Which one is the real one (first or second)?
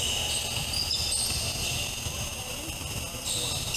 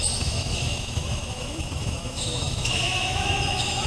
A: first